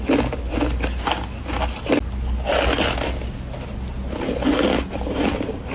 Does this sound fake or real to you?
real